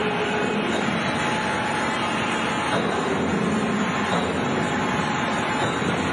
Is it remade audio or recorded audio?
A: recorded